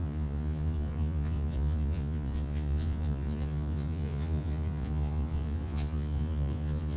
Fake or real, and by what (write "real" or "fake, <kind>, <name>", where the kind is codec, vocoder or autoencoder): fake, vocoder, Vocos